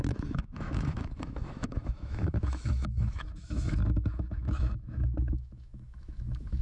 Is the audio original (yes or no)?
no